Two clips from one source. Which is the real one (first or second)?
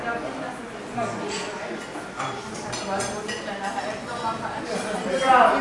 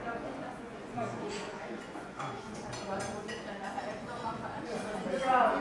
first